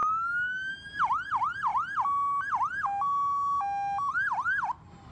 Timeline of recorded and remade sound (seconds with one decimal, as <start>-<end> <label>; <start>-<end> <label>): 0.0-0.7 recorded; 0.7-1.7 remade; 1.7-5.1 recorded